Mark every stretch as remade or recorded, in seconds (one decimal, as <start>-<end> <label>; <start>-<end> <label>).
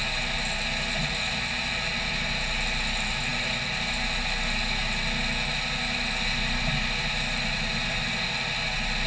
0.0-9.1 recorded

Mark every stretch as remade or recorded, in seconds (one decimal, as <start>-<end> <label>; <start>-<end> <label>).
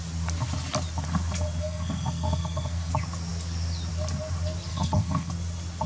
0.0-1.6 recorded; 1.6-2.9 remade; 2.9-4.7 recorded; 4.7-5.3 remade; 5.3-5.9 recorded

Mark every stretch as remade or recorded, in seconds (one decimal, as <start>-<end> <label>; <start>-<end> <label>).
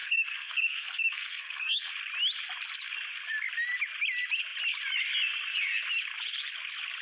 0.0-1.9 remade; 1.9-7.0 recorded